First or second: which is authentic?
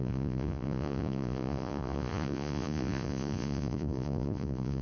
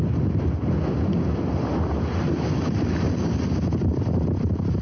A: second